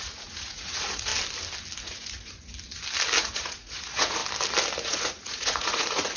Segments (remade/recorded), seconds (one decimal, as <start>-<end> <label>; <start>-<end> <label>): 0.0-1.1 remade; 1.1-1.8 recorded; 1.8-2.5 remade; 2.5-3.2 recorded; 3.2-4.2 remade; 4.2-4.8 recorded; 4.8-6.2 remade